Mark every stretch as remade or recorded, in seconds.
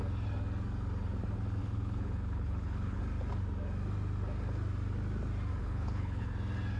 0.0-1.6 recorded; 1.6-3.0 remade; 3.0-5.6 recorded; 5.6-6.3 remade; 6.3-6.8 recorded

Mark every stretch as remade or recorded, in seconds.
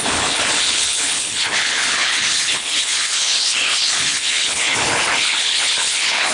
0.0-6.3 remade